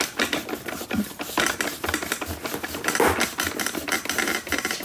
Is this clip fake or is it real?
real